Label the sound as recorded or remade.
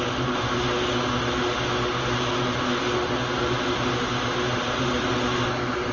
recorded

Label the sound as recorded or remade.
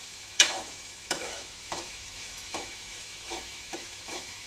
remade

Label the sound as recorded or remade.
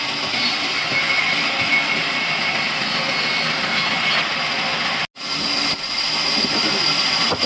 recorded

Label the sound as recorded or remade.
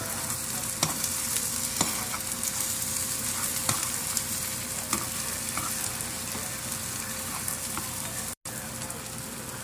recorded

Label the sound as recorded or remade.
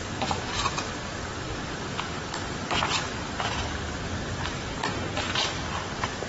recorded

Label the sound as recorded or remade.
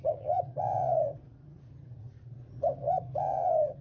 remade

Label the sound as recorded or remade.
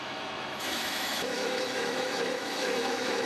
remade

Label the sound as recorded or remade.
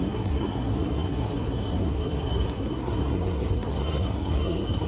remade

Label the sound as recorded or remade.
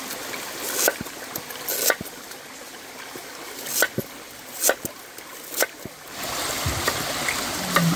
recorded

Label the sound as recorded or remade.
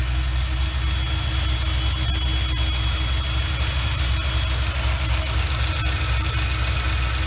recorded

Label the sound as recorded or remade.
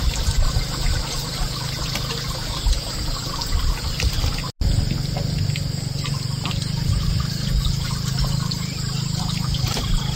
recorded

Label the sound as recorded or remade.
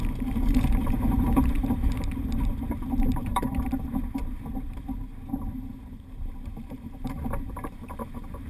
remade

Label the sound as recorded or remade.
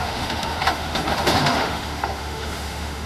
remade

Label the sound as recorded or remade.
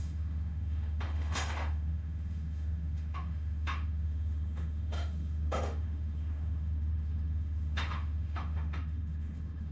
remade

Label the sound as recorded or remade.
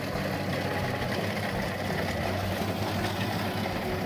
recorded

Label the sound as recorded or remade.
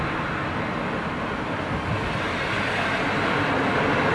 recorded